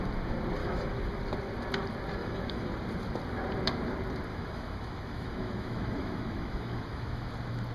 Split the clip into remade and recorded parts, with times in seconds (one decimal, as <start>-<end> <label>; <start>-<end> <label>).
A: 0.0-0.6 recorded; 0.6-1.2 remade; 1.2-2.2 recorded; 2.2-2.7 remade; 2.7-4.3 recorded; 4.3-7.3 remade; 7.3-7.7 recorded